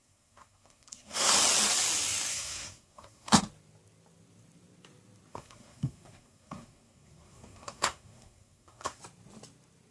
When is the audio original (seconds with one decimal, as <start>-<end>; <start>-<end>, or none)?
1.3-2.3; 3.4-5.3; 9.0-9.9